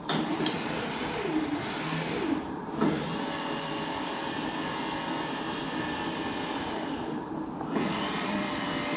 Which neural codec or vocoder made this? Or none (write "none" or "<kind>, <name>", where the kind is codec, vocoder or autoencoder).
vocoder, BigVGAN v2